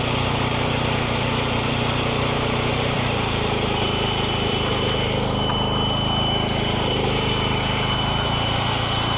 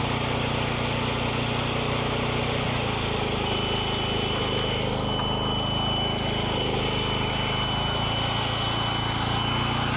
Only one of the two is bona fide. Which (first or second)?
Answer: second